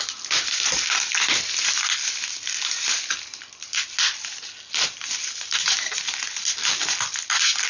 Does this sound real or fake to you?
real